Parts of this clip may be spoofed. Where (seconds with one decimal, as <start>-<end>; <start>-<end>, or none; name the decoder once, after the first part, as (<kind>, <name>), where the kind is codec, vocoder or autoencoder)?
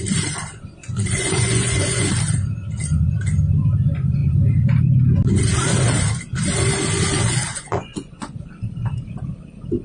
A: 0.8-2.1 (vocoder, Vocos); 7.5-8.5